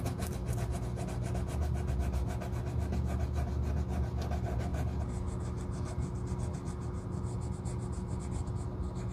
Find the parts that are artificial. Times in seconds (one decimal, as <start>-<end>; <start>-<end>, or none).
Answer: none